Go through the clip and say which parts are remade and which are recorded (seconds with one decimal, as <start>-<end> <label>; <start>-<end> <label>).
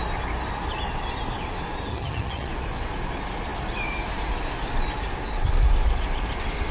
0.0-1.9 recorded; 1.9-2.5 remade; 2.5-6.7 recorded